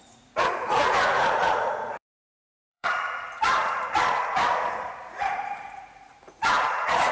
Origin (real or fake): fake